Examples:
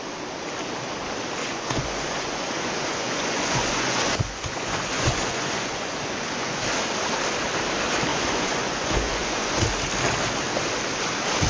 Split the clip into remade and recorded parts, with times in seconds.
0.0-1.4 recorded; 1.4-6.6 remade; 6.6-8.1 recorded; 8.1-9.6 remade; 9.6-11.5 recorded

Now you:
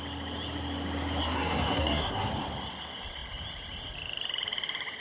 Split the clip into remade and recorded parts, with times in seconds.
0.0-1.2 recorded; 1.2-2.3 remade; 2.3-5.0 recorded

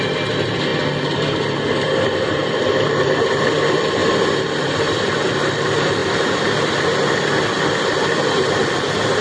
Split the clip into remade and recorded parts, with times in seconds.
0.0-4.0 remade; 4.0-4.6 recorded; 4.6-6.0 remade; 6.0-8.6 recorded; 8.6-9.2 remade

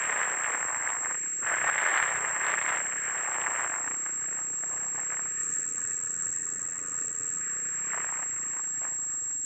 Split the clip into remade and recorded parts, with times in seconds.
0.0-5.4 recorded; 5.4-7.4 remade; 7.4-9.5 recorded

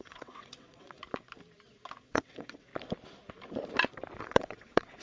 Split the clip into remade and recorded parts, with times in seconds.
0.0-1.0 remade; 1.0-2.0 recorded; 2.0-2.7 remade; 2.7-4.2 recorded; 4.2-5.0 remade